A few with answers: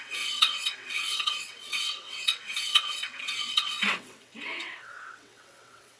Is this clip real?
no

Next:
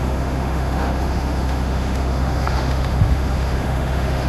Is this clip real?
no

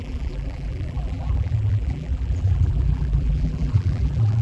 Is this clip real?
no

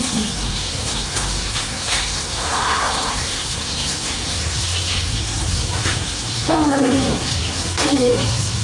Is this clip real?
no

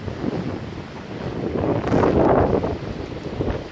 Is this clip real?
yes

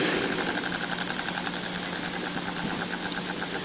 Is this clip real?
yes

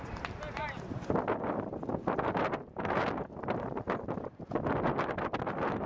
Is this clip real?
yes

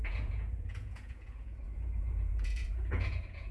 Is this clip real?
no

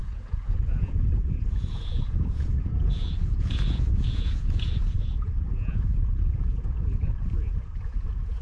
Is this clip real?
no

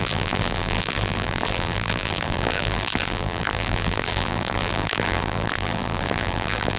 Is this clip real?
no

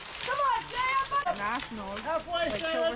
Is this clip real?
yes